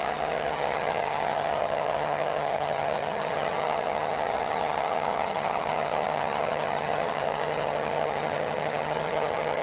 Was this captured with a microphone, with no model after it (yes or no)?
no